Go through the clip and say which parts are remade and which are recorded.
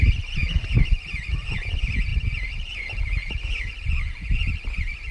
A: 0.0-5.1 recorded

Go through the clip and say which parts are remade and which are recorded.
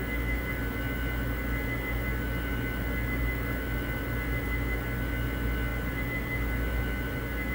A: 0.0-7.5 recorded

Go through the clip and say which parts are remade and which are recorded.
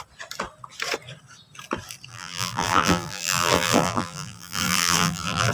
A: 0.0-2.1 recorded; 2.1-5.5 remade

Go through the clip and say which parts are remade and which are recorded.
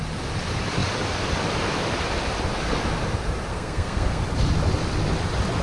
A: 0.0-3.5 recorded; 3.5-4.2 remade; 4.2-5.6 recorded